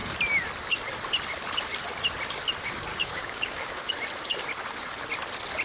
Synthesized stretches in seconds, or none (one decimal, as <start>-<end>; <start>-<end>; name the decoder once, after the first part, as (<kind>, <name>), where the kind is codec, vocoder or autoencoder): 2.9-3.9 (codec, DAC)